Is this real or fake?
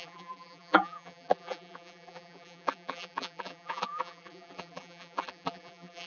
fake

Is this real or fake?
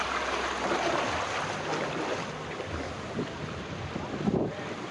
real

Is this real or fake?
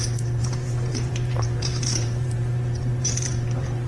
fake